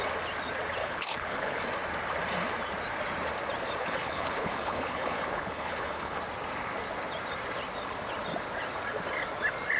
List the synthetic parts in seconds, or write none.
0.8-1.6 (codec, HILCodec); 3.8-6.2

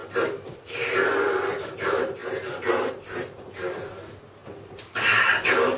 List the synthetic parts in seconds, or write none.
0.0-1.7 (vocoder, BigVGAN v2); 4.4-5.8

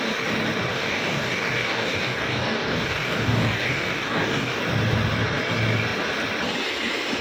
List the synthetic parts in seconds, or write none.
0.7-4.6 (codec, DAC)

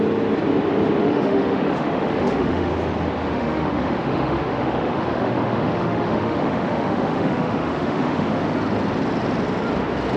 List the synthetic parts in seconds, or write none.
1.0-2.7 (autoencoder, DAC-VAE); 3.2-8.4